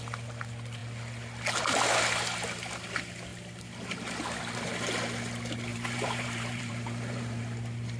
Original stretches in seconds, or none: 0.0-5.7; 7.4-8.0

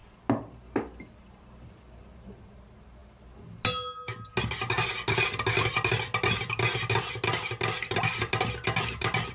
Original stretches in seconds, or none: 0.0-9.3

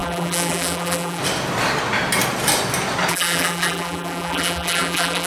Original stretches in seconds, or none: 1.2-3.1